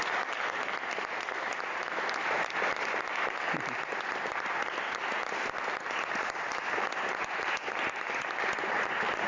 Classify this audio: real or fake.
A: real